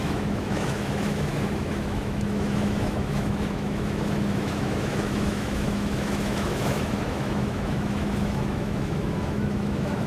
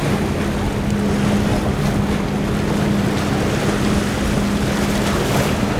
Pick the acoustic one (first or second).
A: second